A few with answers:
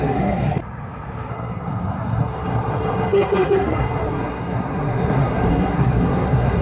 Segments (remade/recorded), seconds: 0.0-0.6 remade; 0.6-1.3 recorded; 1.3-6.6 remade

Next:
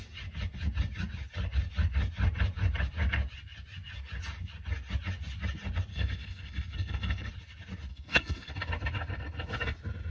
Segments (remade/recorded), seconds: 0.0-5.9 recorded; 5.9-7.3 remade; 7.3-7.9 recorded; 7.9-8.5 remade; 8.5-10.1 recorded

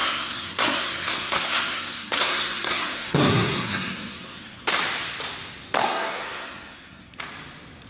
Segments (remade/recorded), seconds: 0.0-4.6 remade; 4.6-5.8 recorded; 5.8-7.2 remade; 7.2-7.9 recorded

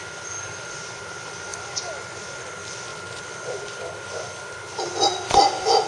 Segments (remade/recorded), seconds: 0.0-1.5 recorded; 1.5-2.4 remade; 2.4-2.9 recorded; 2.9-4.4 remade; 4.4-5.9 recorded

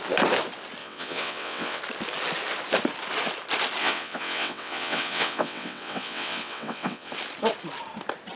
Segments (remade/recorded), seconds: 0.0-0.8 recorded; 0.8-1.8 remade; 1.8-3.8 recorded; 3.8-7.1 remade; 7.1-8.4 recorded